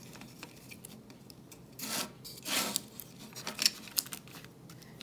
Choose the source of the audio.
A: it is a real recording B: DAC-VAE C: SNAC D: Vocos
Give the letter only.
A